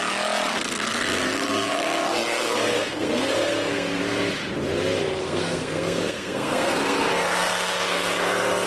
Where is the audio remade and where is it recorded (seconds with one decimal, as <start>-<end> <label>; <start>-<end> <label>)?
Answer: 0.0-0.5 recorded; 0.5-4.0 remade; 4.0-5.2 recorded; 5.2-8.7 remade